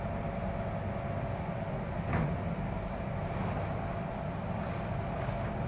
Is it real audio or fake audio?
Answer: real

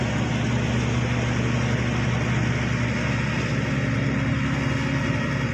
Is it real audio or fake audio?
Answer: real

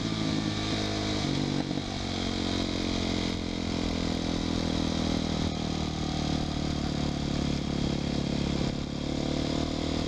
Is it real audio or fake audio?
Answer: real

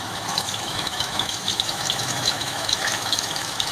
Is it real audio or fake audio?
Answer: fake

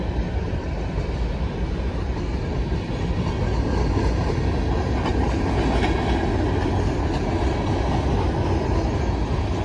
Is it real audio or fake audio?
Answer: real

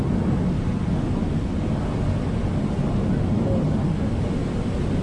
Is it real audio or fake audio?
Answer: real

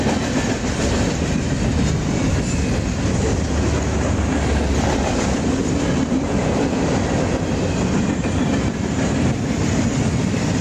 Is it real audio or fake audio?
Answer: real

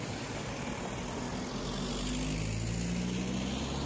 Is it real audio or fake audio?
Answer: real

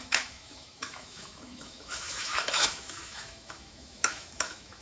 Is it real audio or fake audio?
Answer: fake